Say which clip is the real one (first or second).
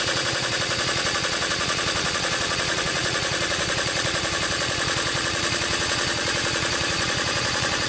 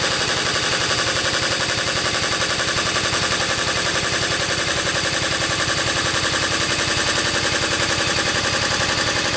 second